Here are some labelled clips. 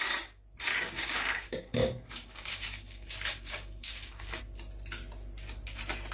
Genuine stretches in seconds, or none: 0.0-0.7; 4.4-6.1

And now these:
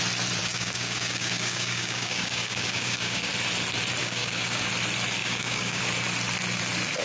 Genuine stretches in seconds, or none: 0.0-0.4; 3.3-4.0; 4.7-5.2; 5.8-7.0

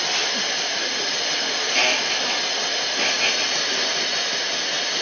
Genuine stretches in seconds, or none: 0.0-5.0

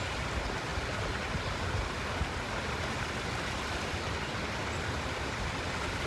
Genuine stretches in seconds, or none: 0.0-6.1

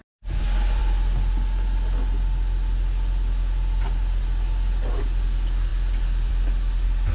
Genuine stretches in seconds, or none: 0.0-7.1